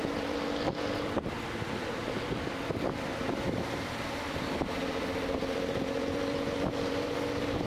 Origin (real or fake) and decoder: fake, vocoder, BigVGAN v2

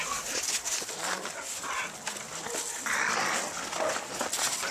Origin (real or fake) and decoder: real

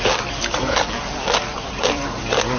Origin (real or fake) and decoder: fake, vocoder, BigVGAN v2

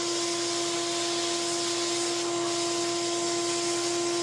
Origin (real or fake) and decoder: real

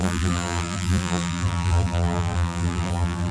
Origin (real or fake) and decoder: fake, vocoder, BigVGAN v2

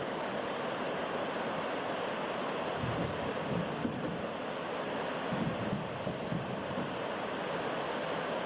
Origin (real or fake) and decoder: real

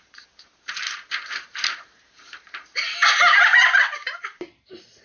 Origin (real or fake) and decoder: fake, vocoder, BigVGAN v2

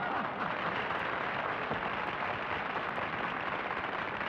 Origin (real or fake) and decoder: fake, vocoder, BigVGAN v2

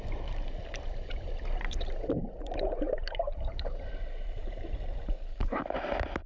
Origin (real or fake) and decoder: fake, vocoder, BigVGAN v2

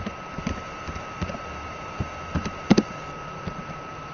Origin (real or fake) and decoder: fake, vocoder, BigVGAN v2